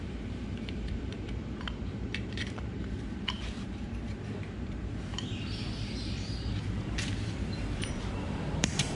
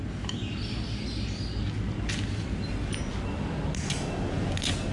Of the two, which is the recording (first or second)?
second